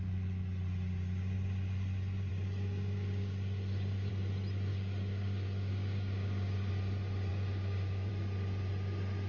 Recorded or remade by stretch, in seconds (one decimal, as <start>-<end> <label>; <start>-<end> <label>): 0.0-2.3 recorded; 2.3-4.1 remade; 4.1-4.7 recorded; 4.7-6.7 remade; 6.7-7.3 recorded; 7.3-8.1 remade; 8.1-9.3 recorded